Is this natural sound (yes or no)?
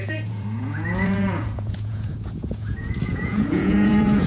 no